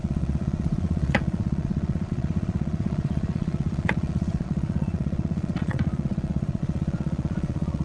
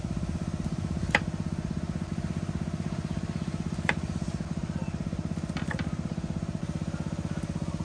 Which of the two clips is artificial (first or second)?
first